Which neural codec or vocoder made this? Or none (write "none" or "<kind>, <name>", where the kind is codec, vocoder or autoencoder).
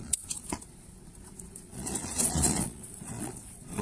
vocoder, Vocos